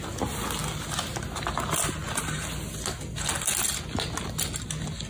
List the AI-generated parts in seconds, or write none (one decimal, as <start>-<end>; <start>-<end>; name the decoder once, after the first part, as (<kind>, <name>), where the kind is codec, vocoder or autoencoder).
none